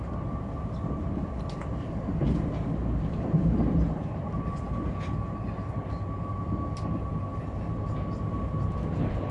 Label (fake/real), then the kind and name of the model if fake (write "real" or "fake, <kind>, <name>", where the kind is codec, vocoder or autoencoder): real